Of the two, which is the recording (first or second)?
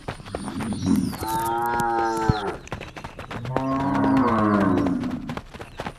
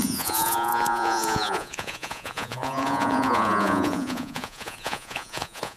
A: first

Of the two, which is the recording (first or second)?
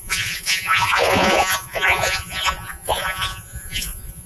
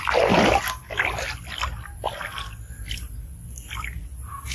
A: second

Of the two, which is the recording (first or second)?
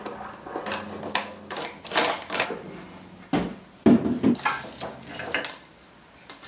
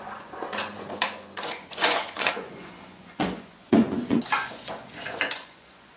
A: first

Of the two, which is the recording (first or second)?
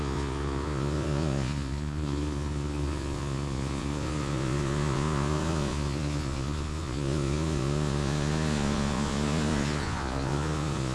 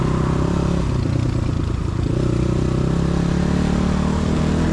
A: second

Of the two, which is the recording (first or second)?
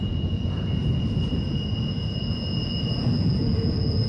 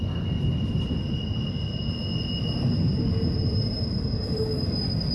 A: second